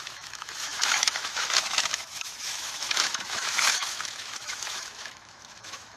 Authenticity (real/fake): fake